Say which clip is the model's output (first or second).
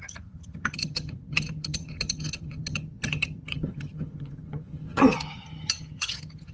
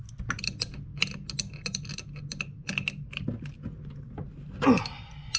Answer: first